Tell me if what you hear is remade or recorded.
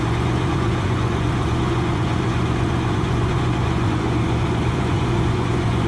remade